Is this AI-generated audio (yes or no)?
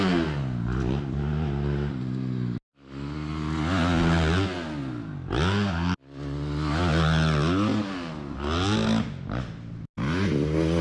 no